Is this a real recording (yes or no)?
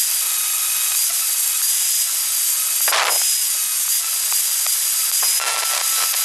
yes